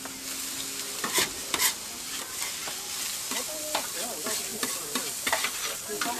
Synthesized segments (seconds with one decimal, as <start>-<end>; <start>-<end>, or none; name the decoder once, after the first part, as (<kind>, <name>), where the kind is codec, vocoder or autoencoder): none